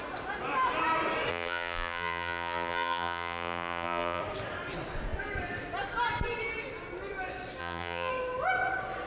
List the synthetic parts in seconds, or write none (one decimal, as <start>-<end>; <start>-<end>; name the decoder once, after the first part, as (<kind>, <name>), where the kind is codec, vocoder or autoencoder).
1.3-4.2 (vocoder, BigVGAN v2); 7.6-8.1